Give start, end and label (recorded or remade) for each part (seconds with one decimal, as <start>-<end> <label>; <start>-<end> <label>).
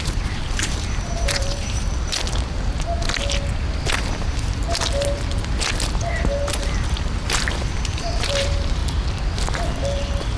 0.0-1.9 remade; 1.9-4.0 recorded; 4.0-4.6 remade; 4.6-6.5 recorded; 6.5-8.8 remade; 8.8-10.4 recorded